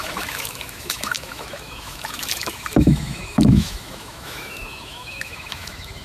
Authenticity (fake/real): fake